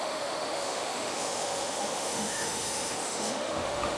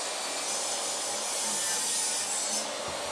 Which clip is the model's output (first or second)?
first